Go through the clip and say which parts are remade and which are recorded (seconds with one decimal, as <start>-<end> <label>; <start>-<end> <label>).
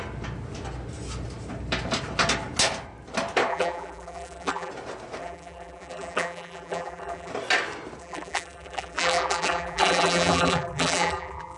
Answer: 0.0-3.5 recorded; 3.5-4.7 remade; 4.7-5.2 recorded; 5.2-7.3 remade; 7.3-8.0 recorded; 8.0-11.6 remade